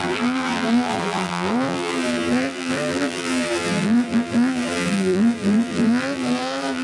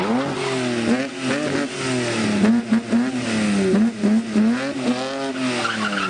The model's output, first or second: first